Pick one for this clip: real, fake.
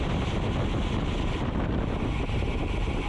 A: real